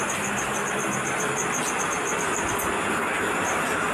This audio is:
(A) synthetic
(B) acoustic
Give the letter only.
B